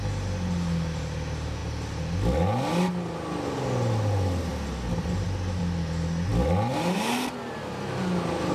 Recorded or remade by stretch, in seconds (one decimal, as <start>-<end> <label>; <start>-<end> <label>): 0.0-8.5 recorded